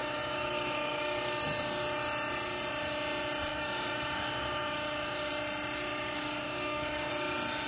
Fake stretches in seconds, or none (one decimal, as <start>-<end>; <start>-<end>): 0.0-1.4; 3.5-5.3; 5.9-7.1